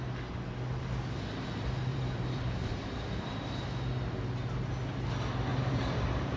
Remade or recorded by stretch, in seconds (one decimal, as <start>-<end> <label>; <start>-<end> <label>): 0.0-1.9 recorded; 1.9-3.6 remade; 3.6-5.5 recorded; 5.5-6.4 remade